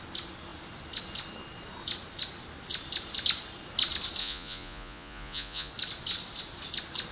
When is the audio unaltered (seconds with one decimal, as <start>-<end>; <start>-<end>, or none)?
0.0-4.2; 5.7-7.1